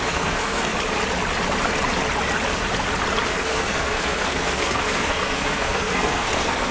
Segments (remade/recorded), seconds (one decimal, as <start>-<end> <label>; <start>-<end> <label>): 0.0-0.7 remade; 0.7-3.3 recorded; 3.3-6.7 remade